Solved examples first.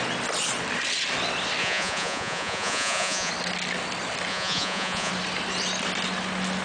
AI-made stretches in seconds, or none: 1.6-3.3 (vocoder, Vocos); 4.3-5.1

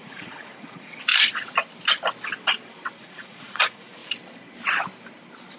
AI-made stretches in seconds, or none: 0.0-1.1 (vocoder, Vocos); 3.0-4.0